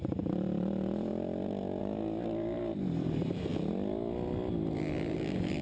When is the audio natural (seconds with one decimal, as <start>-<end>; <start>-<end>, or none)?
1.1-1.8; 3.5-5.6